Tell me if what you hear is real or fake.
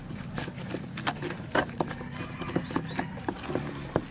real